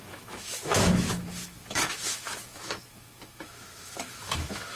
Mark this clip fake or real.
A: fake